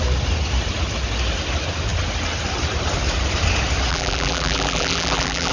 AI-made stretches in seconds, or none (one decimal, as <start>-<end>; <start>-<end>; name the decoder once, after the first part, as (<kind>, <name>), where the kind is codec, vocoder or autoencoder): 3.9-5.5 (vocoder, BigVGAN v2)